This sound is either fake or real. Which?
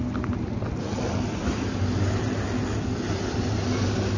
real